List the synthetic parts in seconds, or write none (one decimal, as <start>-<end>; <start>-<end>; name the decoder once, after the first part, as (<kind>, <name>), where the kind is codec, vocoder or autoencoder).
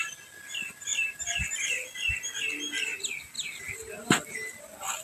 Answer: 0.9-2.3 (vocoder, BigVGAN v2)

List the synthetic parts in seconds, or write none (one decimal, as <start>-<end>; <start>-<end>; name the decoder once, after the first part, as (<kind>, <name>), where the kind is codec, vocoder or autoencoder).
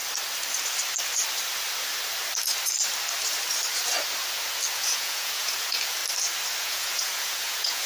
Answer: 4.7-6.0 (vocoder, Vocos); 6.6-7.9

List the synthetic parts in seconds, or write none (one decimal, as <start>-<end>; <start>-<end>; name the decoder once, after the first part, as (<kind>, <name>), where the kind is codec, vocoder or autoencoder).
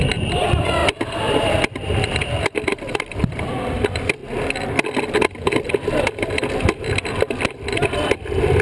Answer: 0.0-4.2 (vocoder, BigVGAN v2); 5.7-8.6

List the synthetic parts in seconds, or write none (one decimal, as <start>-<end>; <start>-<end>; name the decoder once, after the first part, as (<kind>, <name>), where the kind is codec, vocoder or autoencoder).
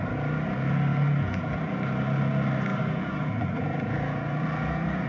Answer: 0.9-1.7 (vocoder, BigVGAN v2); 2.7-5.1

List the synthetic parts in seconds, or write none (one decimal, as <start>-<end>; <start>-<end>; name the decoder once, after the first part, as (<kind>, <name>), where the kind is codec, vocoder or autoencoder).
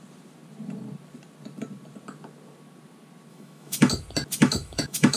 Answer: 3.3-3.9 (autoencoder, DAC-VAE); 4.4-5.2